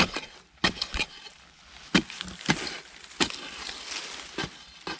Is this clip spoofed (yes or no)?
no